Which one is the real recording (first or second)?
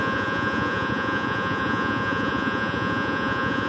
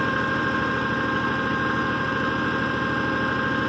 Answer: second